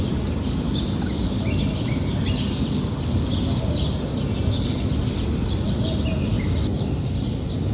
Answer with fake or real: real